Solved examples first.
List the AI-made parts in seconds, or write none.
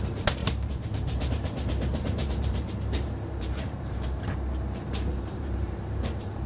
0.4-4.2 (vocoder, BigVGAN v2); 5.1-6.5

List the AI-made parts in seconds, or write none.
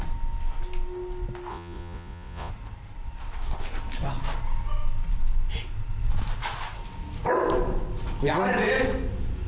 1.5-2.5 (vocoder, Vocos)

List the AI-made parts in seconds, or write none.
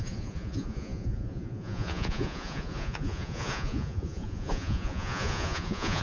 0.0-6.0 (vocoder, Vocos)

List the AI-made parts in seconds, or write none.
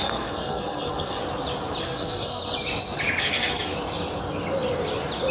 0.0-1.2 (codec, SNAC); 1.8-2.4; 3.2-3.7